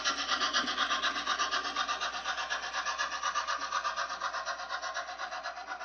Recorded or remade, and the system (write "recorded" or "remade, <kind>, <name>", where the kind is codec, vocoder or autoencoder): recorded